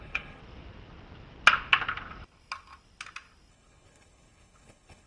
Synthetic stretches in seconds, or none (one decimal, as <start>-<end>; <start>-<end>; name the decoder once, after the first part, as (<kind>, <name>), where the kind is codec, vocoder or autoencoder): 0.0-0.4 (codec, HILCodec); 3.5-5.1

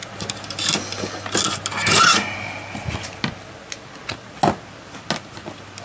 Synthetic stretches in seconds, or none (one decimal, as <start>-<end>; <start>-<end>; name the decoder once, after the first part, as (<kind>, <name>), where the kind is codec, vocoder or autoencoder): none

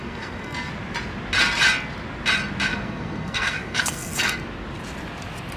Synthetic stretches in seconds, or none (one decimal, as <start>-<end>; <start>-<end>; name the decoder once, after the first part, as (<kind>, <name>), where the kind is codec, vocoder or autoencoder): 0.0-0.7 (codec, SNAC); 2.7-4.4